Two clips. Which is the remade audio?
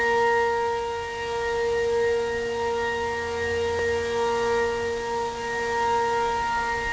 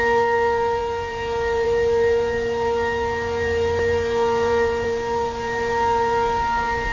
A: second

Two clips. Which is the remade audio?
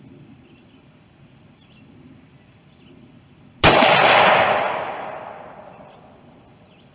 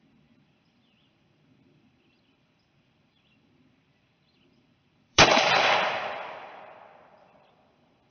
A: second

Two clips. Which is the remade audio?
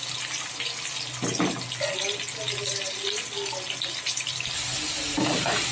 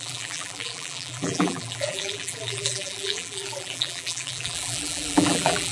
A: second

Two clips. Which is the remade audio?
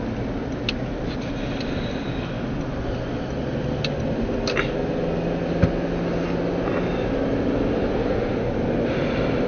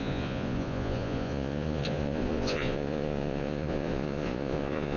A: second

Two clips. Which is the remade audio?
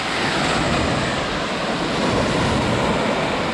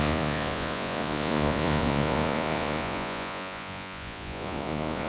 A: second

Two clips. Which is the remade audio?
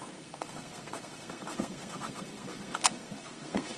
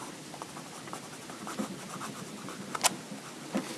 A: first